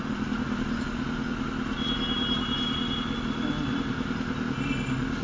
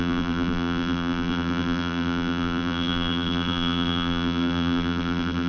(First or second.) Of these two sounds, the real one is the first